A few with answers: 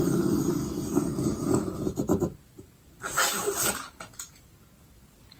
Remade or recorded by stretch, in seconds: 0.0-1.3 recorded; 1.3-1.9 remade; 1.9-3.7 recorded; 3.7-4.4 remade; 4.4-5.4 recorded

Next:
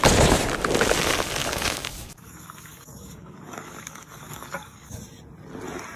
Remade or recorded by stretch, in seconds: 0.0-1.4 recorded; 1.4-5.0 remade; 5.0-6.0 recorded

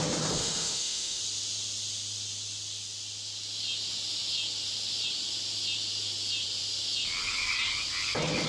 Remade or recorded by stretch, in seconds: 0.0-0.4 recorded; 0.4-1.2 remade; 1.2-8.5 recorded

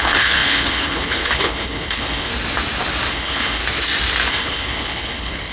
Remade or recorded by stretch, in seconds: 0.0-2.3 remade; 2.3-3.1 recorded; 3.1-3.6 remade; 3.6-4.3 recorded; 4.3-5.5 remade

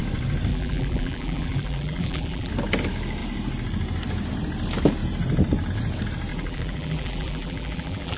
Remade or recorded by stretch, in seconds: 0.0-0.5 recorded; 0.5-2.5 remade; 2.5-6.3 recorded; 6.3-8.2 remade

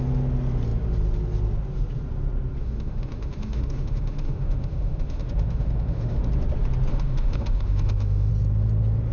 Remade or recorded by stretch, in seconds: 0.0-2.6 recorded; 2.6-6.3 remade; 6.3-6.9 recorded; 6.9-8.3 remade; 8.3-9.1 recorded

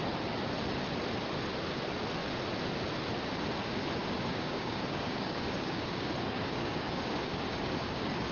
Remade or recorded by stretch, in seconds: 0.0-4.0 recorded; 4.0-8.3 remade